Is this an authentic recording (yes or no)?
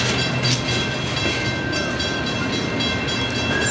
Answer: yes